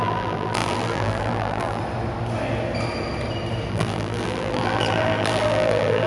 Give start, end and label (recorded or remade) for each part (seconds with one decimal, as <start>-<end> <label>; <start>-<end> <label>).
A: 0.0-1.8 remade; 1.8-3.7 recorded; 3.7-6.1 remade